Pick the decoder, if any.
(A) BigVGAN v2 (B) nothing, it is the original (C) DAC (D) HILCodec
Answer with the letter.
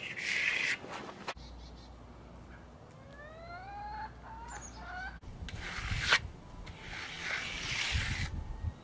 B